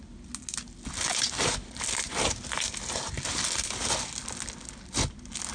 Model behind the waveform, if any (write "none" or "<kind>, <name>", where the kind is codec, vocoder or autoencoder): none